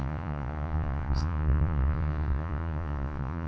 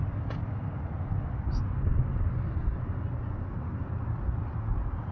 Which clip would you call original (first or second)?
second